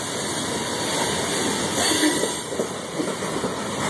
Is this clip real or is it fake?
real